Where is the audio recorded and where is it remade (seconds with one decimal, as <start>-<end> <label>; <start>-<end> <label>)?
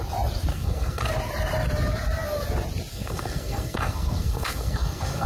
0.0-0.5 recorded; 0.5-1.1 remade; 1.1-2.9 recorded; 2.9-5.3 remade